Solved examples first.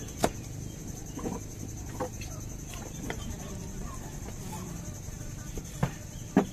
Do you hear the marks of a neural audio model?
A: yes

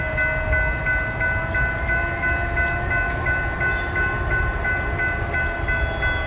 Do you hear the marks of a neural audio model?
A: no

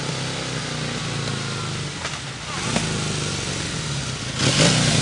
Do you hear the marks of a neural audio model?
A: no